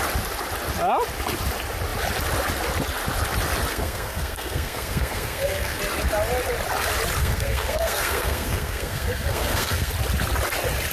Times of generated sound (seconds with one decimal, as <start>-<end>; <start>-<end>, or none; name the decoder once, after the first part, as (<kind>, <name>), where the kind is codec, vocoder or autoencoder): 3.7-5.8 (codec, SNAC); 7.2-9.9